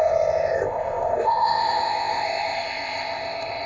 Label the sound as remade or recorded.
remade